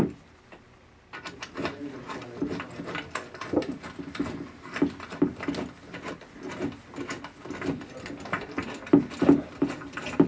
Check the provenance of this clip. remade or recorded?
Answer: recorded